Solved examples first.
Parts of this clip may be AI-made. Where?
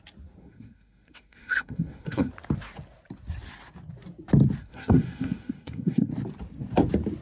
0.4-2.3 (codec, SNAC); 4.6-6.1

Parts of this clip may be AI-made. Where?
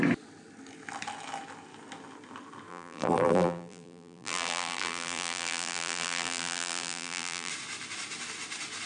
2.7-7.5 (vocoder, BigVGAN v2)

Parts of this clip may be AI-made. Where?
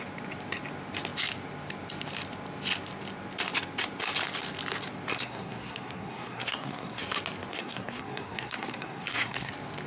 5.1-7.0 (codec, SNAC); 7.5-9.5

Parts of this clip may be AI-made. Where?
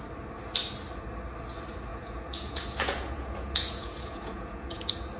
1.9-4.8 (vocoder, Vocos)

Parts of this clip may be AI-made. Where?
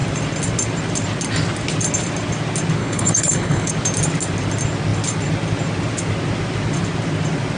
2.8-3.7 (codec, HILCodec)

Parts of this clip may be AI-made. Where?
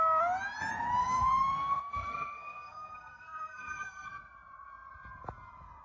1.0-4.1 (codec, SNAC)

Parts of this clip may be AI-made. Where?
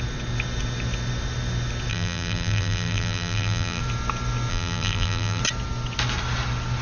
1.9-3.8 (vocoder, BigVGAN v2); 4.5-5.4